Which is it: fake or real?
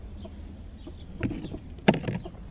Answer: real